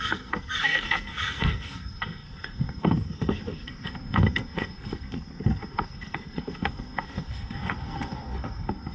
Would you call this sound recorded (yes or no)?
no